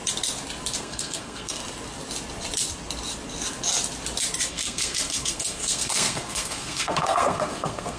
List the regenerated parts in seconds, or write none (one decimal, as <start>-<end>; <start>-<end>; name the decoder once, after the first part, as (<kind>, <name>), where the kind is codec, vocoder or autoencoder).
0.8-1.6 (codec, SNAC); 4.5-8.0